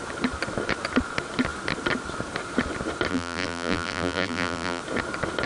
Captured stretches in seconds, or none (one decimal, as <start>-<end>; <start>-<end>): 0.0-3.1; 4.8-5.5